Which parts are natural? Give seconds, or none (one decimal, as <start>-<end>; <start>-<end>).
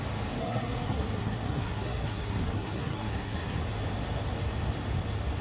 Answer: 0.0-0.4; 3.6-5.4